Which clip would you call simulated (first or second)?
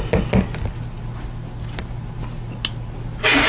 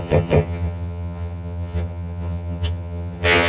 second